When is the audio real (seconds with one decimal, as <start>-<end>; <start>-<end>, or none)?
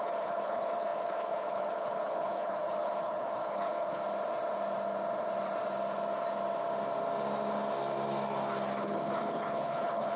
4.0-8.8